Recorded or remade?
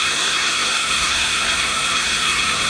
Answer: remade